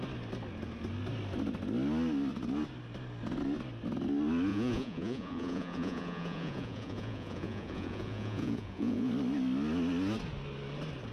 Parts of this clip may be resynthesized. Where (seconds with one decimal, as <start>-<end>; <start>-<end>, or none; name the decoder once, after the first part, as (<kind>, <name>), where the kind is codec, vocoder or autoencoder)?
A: 4.5-9.1 (vocoder, Vocos)